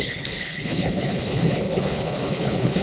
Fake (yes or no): yes